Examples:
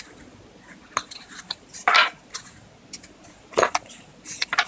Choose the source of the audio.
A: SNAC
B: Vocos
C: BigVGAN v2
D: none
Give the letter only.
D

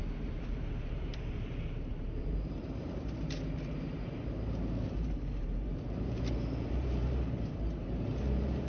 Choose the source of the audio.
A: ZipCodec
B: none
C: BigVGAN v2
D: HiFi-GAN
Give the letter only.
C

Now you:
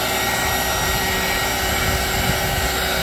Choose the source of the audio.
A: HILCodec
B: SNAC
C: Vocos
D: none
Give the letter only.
D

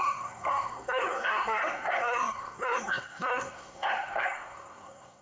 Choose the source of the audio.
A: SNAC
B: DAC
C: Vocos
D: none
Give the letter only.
A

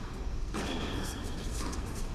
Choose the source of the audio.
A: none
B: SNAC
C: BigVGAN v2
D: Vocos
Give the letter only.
B